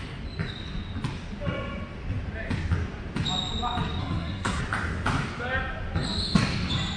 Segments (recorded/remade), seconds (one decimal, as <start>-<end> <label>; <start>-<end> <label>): 0.0-4.0 recorded; 4.0-4.6 remade; 4.6-7.0 recorded